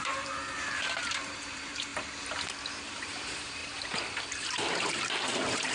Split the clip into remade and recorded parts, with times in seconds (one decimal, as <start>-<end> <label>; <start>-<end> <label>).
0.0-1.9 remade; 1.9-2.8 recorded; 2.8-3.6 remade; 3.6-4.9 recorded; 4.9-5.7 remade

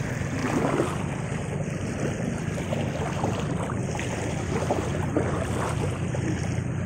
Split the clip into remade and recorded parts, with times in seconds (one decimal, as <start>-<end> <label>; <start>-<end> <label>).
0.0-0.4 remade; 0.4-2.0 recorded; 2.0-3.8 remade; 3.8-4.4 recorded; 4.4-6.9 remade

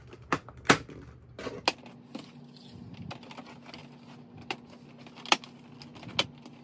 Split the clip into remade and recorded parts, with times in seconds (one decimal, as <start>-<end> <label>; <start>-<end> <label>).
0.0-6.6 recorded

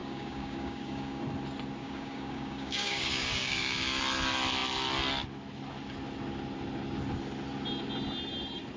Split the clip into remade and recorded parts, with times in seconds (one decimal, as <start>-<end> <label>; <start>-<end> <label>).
0.0-1.2 remade; 1.2-1.8 recorded; 1.8-4.0 remade; 4.0-8.8 recorded

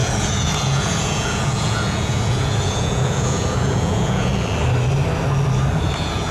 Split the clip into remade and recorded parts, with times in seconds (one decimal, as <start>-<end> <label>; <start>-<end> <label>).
0.0-4.3 remade; 4.3-5.7 recorded; 5.7-6.3 remade

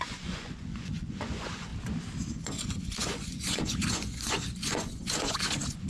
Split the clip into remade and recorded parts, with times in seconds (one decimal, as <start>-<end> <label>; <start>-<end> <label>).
0.0-1.7 remade; 1.7-2.3 recorded; 2.3-5.9 remade